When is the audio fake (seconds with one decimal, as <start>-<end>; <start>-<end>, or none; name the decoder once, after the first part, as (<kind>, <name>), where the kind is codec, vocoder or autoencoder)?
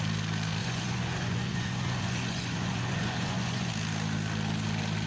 0.6-3.7 (vocoder, Vocos)